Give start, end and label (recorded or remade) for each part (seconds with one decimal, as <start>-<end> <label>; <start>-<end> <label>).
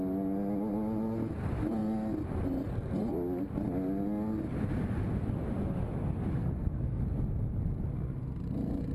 0.0-6.4 recorded; 6.4-7.0 remade; 7.0-8.9 recorded